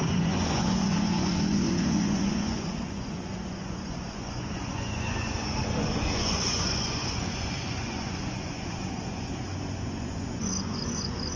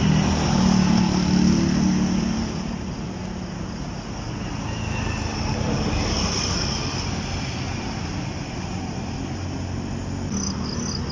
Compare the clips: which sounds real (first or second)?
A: second